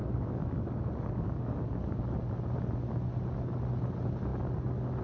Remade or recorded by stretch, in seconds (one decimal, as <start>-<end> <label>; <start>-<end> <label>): 0.0-2.0 remade; 2.0-5.0 recorded